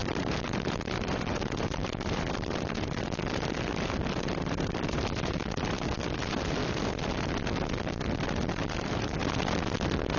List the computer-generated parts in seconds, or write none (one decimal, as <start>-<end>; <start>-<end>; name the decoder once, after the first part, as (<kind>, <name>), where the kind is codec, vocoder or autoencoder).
0.0-9.2 (vocoder, BigVGAN v2)